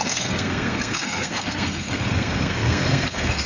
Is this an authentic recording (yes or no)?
no